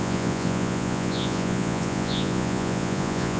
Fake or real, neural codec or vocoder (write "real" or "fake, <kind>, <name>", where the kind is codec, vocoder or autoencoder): fake, vocoder, Vocos